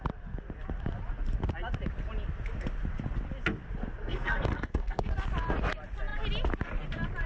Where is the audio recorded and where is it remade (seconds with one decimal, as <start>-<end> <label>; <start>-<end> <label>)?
0.0-4.0 recorded; 4.0-5.1 remade; 5.1-7.3 recorded